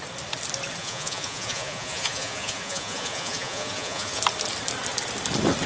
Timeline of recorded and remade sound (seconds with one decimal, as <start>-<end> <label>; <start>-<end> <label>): 0.0-0.8 recorded; 0.8-4.2 remade; 4.2-5.7 recorded